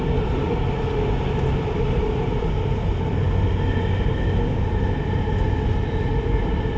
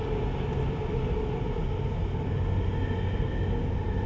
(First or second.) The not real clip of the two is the first